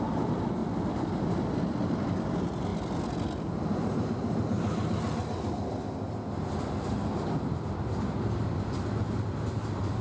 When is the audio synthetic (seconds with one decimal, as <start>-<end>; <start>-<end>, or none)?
none